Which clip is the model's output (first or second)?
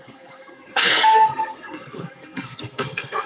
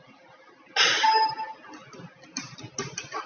first